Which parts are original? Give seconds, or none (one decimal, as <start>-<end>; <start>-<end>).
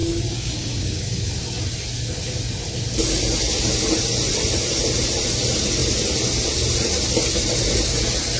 1.3-8.4